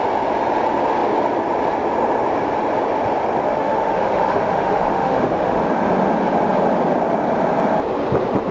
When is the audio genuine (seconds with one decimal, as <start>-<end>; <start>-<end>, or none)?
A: 0.0-3.5; 5.6-8.5